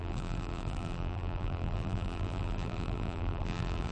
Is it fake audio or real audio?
fake